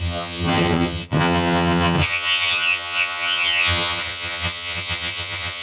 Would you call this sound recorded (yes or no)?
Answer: no